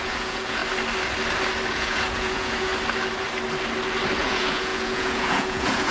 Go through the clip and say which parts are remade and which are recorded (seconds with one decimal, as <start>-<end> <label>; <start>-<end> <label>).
0.0-0.6 remade; 0.6-1.7 recorded; 1.7-2.7 remade; 2.7-4.2 recorded; 4.2-5.9 remade